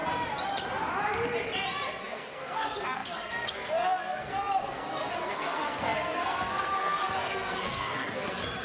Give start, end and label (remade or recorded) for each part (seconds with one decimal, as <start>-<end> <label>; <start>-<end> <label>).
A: 0.0-2.0 recorded; 2.0-8.6 remade